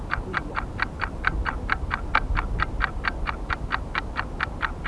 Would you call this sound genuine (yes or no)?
yes